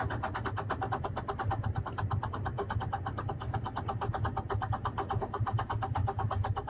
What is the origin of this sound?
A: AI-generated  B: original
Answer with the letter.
B